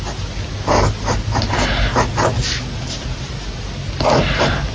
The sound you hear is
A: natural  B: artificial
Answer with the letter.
A